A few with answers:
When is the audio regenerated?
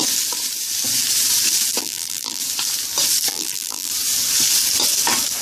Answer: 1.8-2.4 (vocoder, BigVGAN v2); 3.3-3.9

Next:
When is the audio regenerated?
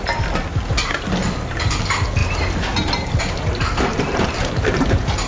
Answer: 2.2-3.2 (vocoder, BigVGAN v2); 3.9-5.3